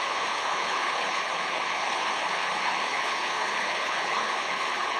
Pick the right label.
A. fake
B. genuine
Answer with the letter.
A